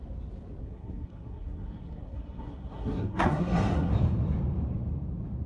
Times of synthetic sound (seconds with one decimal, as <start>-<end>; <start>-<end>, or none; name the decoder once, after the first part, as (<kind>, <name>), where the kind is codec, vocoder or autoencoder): 0.6-3.9 (codec, SNAC)